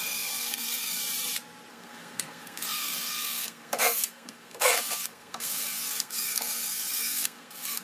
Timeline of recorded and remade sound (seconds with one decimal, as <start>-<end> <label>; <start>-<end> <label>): 0.0-1.0 remade; 1.0-1.7 recorded; 1.7-7.8 remade